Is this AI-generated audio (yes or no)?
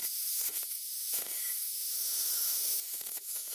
yes